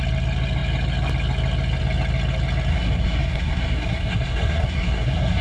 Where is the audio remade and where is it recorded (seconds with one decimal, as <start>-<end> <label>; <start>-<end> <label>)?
0.0-2.7 recorded; 2.7-5.4 remade